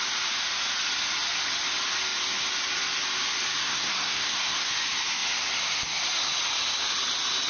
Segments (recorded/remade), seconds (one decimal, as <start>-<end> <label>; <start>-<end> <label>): 0.0-3.6 recorded; 3.6-4.7 remade; 4.7-7.5 recorded